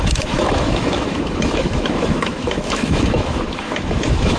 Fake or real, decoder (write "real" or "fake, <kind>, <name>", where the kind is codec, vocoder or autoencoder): fake, autoencoder, DAC-VAE